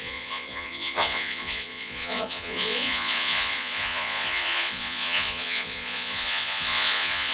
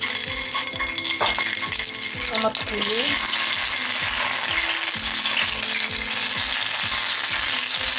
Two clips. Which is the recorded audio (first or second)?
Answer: second